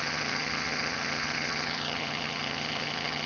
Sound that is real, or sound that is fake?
fake